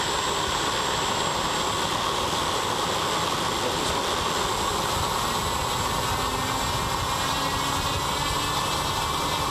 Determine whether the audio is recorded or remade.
recorded